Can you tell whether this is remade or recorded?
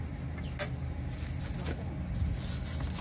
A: recorded